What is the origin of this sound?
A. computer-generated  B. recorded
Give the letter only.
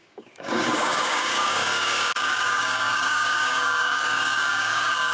A